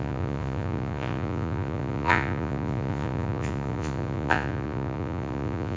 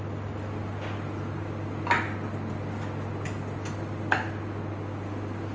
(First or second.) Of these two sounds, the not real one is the first